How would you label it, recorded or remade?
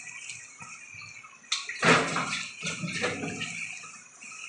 recorded